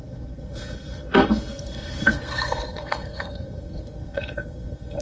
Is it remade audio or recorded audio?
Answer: remade